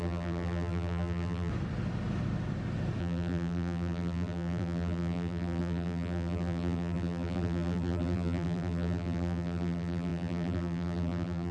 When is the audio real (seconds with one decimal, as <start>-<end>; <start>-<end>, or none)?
1.5-3.0